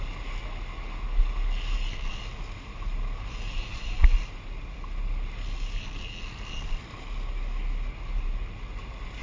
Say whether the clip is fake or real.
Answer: real